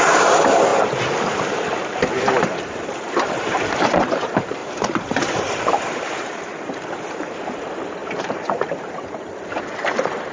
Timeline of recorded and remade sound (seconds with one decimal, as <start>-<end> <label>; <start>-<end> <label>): 0.0-0.7 remade; 0.7-1.3 recorded; 1.3-10.3 remade